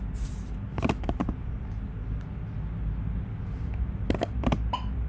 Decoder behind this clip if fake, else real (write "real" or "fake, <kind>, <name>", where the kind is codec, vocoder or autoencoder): real